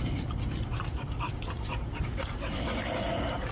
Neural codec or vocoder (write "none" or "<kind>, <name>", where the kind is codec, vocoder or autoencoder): none